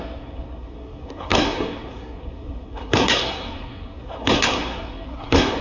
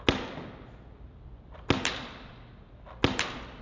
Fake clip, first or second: first